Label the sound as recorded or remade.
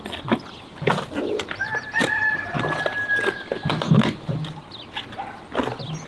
recorded